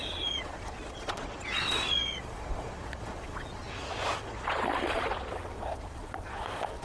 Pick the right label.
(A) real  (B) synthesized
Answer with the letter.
B